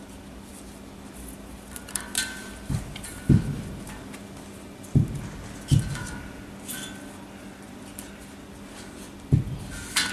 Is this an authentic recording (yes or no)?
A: yes